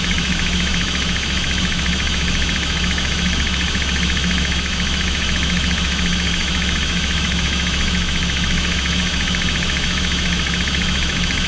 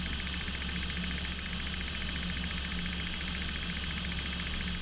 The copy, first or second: first